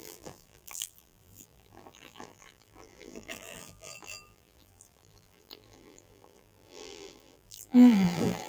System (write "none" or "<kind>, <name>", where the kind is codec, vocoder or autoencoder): vocoder, BigVGAN v2